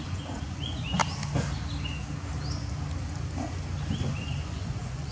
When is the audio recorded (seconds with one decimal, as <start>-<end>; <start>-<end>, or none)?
1.0-4.1